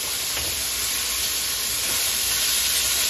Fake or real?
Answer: real